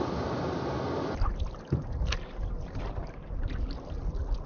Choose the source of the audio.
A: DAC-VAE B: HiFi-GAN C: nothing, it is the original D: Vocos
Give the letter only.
C